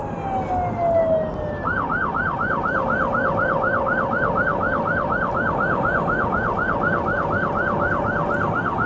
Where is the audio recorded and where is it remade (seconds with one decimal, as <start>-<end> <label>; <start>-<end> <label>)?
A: 0.0-8.9 recorded